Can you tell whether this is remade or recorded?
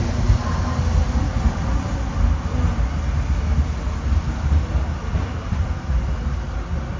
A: recorded